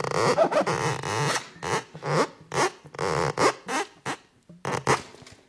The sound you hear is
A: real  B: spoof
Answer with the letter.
A